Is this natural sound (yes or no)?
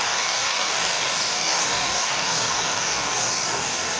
no